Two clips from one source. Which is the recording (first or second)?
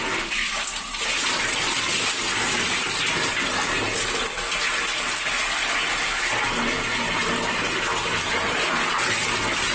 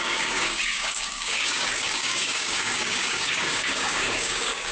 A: first